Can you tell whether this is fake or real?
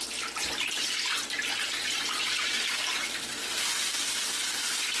fake